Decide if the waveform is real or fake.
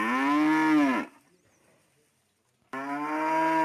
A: real